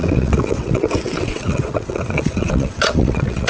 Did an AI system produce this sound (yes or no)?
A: yes